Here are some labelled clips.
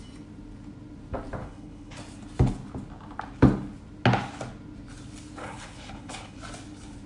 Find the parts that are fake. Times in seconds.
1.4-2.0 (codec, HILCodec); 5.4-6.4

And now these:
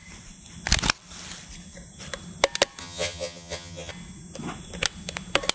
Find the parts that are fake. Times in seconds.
2.8-3.9 (vocoder, HiFi-GAN)

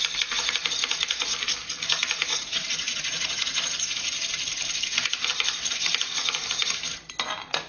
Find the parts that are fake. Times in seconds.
2.3-4.0 (vocoder, Vocos)